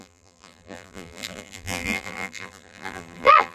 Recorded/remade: remade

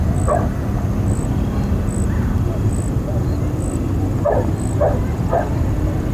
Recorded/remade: recorded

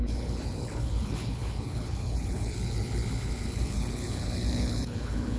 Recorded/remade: remade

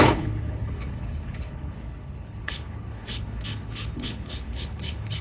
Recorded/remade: remade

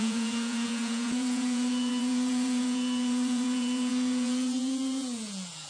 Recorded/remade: remade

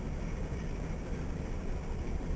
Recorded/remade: recorded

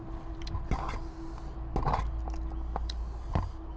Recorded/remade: recorded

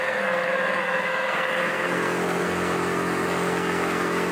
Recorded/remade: remade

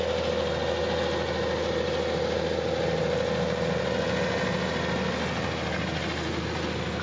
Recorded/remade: recorded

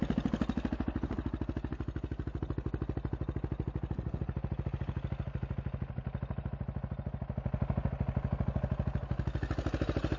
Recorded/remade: recorded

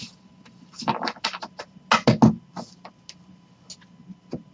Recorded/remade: recorded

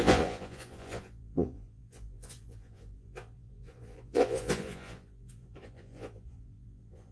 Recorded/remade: remade